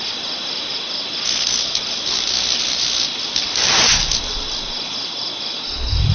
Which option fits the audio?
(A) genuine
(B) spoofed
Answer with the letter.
A